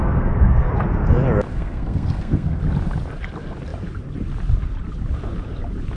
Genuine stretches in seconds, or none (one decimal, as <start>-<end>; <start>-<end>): 0.7-1.5; 2.6-6.0